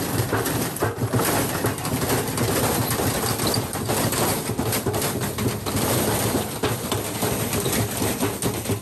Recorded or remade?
recorded